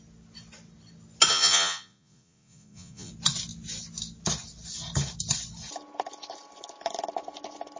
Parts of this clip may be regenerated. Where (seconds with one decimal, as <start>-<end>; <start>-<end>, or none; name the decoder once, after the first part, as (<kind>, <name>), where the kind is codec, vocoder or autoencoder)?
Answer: 1.3-3.1 (vocoder, Vocos)